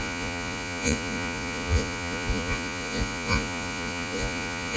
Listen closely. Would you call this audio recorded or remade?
remade